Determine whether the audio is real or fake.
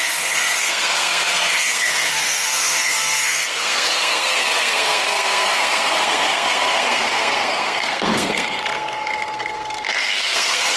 fake